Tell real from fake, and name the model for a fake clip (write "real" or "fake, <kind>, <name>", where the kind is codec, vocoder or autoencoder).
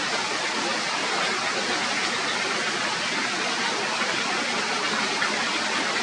real